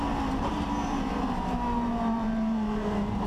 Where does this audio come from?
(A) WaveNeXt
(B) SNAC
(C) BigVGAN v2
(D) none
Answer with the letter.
C